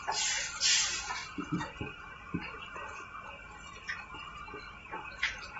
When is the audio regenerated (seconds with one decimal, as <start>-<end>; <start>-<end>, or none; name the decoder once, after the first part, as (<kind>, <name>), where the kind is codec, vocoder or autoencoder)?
none